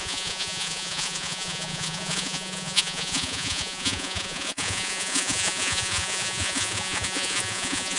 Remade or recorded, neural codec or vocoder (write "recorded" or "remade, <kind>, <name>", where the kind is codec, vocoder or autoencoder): remade, vocoder, Vocos